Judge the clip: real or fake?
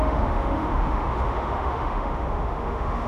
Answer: fake